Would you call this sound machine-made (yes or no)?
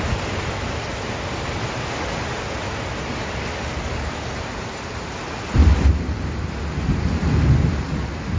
no